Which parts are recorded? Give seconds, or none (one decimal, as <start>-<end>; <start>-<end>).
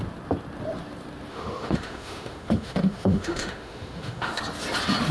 0.0-1.3; 4.4-5.1